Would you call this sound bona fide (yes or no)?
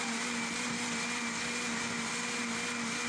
yes